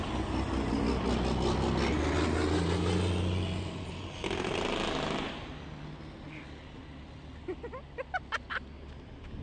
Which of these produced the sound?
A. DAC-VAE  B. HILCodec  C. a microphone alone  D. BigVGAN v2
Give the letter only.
C